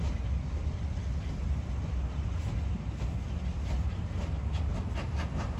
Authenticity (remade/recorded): recorded